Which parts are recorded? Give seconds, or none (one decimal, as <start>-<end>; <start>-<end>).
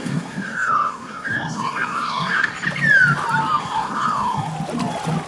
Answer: 2.5-3.6; 4.5-5.3